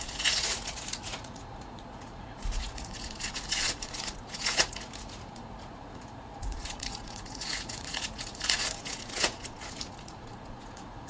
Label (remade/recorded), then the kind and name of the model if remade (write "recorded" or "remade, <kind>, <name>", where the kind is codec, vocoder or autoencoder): remade, vocoder, Vocos